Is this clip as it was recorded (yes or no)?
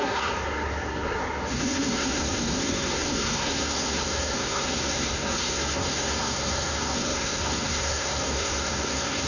no